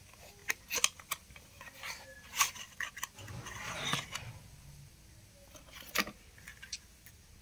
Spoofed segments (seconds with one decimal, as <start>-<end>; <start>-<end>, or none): none